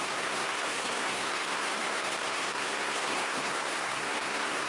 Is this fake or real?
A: fake